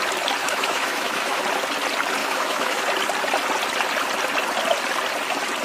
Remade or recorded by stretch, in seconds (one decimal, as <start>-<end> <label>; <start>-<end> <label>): 0.0-0.4 recorded; 0.4-1.4 remade; 1.4-2.2 recorded; 2.2-2.8 remade; 2.8-5.6 recorded